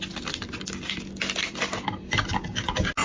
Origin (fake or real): real